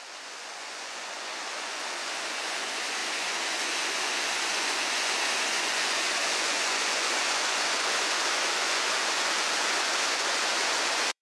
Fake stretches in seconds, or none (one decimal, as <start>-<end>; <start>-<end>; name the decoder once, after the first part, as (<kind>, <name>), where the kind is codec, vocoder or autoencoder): 0.0-11.2 (vocoder, Vocos)